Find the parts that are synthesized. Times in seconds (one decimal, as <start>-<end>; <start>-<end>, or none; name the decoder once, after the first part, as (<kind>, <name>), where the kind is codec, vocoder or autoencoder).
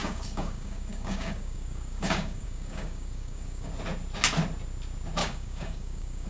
0.0-3.7 (codec, DAC); 5.2-6.3